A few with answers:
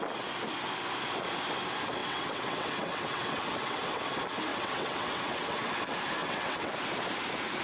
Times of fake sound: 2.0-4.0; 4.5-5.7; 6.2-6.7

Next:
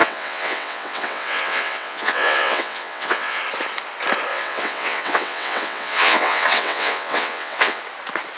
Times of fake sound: 0.0-3.4; 4.3-7.8

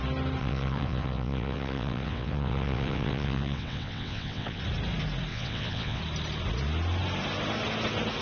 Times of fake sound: 0.4-4.6; 5.3-6.0

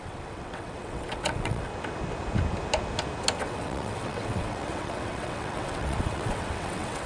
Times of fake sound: 0.0-1.7; 3.4-7.1

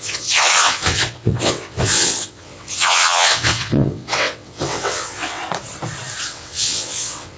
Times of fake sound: 0.0-5.4; 6.3-7.4

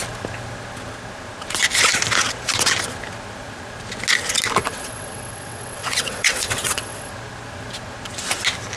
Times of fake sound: 4.6-7.1